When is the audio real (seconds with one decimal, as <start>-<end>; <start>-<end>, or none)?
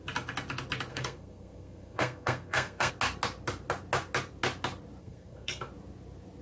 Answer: 0.0-0.9; 2.9-5.0; 5.7-6.4